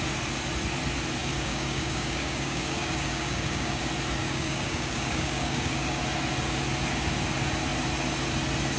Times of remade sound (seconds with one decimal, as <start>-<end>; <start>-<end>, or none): 1.2-3.8; 4.2-6.0

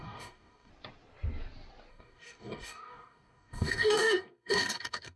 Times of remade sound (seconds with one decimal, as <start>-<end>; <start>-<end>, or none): 0.0-0.7; 1.9-5.2